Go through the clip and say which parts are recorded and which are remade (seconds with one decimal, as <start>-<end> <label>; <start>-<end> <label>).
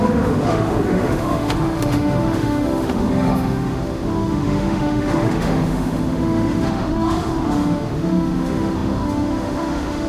0.0-10.1 remade